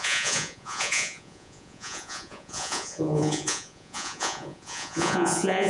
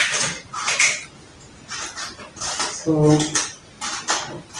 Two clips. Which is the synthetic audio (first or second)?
first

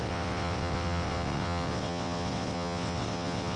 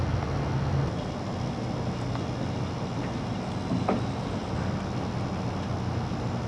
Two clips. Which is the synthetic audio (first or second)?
first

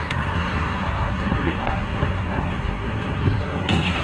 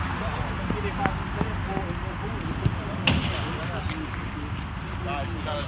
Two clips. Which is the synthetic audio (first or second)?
first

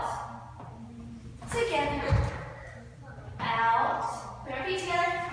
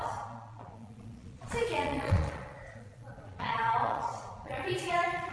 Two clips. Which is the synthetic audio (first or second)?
second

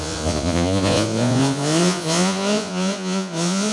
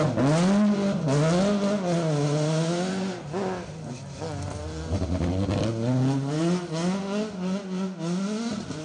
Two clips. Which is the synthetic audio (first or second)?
first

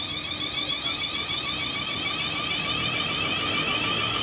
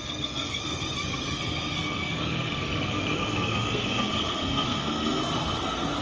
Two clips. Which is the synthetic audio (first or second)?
second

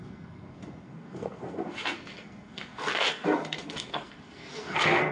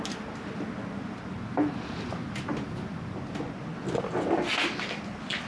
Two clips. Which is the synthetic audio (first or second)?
first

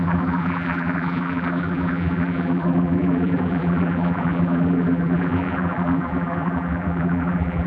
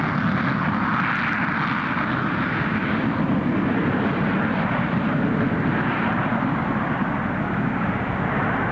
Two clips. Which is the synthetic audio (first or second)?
first